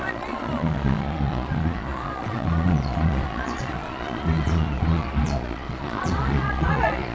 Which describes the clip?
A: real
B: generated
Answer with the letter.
B